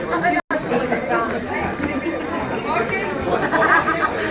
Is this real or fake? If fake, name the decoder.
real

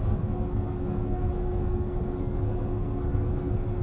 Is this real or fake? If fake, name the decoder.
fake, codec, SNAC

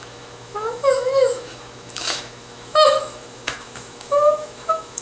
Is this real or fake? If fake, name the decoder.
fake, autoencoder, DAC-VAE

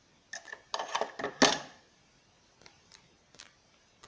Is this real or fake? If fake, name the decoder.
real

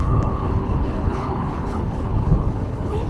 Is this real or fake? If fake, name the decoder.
fake, codec, HILCodec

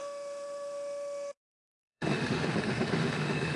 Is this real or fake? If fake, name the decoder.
fake, autoencoder, DAC-VAE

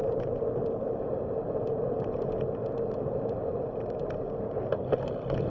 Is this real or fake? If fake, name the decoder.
real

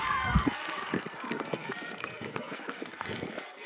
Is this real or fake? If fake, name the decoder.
fake, codec, SNAC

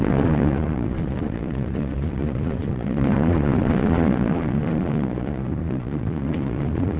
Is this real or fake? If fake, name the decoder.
fake, vocoder, Vocos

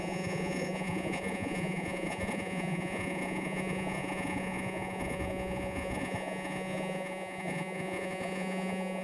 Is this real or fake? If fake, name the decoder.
fake, vocoder, Vocos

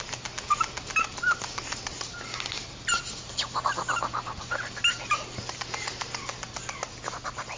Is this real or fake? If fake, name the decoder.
real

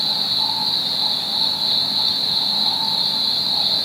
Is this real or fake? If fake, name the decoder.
real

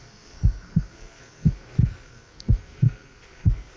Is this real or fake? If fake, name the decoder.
fake, codec, SNAC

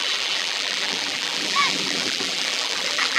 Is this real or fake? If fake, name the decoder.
fake, vocoder, BigVGAN v2